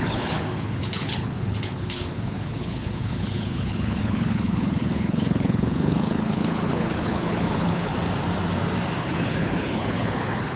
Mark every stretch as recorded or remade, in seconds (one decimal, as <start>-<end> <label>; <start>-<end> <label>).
0.0-7.9 remade; 7.9-9.0 recorded; 9.0-10.6 remade